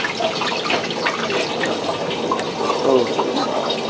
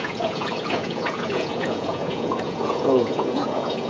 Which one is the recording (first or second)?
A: first